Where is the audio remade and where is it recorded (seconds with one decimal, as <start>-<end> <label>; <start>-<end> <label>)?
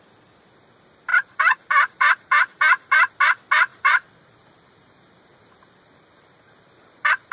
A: 0.0-1.1 recorded; 1.1-3.1 remade; 3.1-3.7 recorded; 3.7-7.3 remade